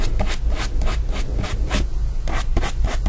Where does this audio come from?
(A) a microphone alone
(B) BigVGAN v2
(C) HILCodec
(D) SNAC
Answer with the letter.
A